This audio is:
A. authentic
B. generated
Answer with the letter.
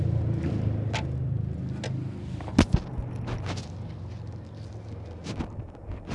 A